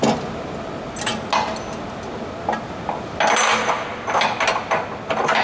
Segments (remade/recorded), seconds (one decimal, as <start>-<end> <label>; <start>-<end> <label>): 0.0-5.4 recorded